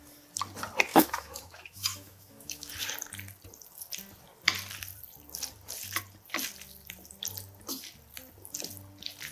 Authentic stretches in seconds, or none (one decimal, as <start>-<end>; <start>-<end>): 0.0-0.9; 2.7-9.3